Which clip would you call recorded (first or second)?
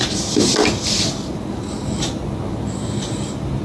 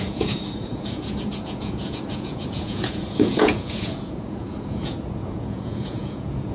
first